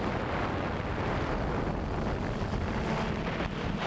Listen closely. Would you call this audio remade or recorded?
recorded